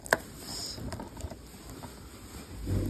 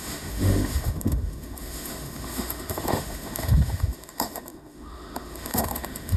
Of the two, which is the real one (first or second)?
first